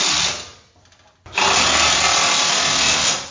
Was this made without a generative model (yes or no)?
yes